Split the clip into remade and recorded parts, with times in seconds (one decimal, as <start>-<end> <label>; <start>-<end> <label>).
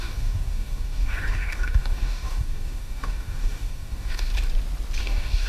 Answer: 0.0-4.3 remade; 4.3-5.0 recorded; 5.0-5.5 remade